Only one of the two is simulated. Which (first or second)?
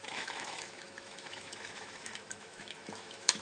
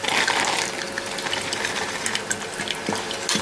first